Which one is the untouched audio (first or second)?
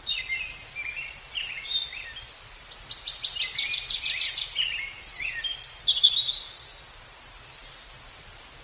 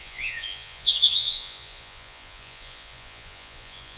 first